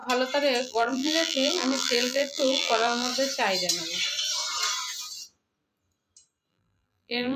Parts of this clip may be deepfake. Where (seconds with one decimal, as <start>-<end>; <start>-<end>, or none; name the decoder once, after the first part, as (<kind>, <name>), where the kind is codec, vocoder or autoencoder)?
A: 0.6-3.1 (vocoder, BigVGAN v2); 6.5-7.4